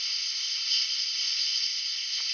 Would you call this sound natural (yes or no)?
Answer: no